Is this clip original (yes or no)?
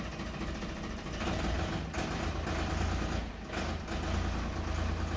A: yes